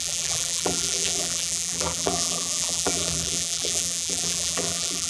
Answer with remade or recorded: remade